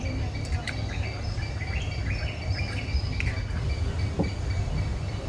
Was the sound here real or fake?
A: real